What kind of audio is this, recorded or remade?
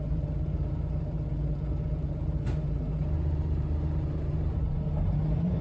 remade